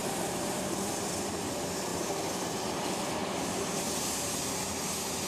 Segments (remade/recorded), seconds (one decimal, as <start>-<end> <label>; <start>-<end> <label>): 0.0-0.9 remade; 0.9-1.9 recorded; 1.9-2.6 remade; 2.6-3.2 recorded; 3.2-4.4 remade; 4.4-5.3 recorded